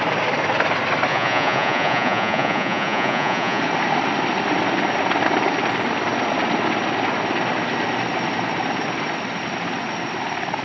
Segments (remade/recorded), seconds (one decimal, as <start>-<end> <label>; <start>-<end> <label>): 0.0-1.1 recorded; 1.1-3.6 remade; 3.6-10.6 recorded